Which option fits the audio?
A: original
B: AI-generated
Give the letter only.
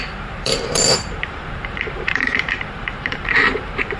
B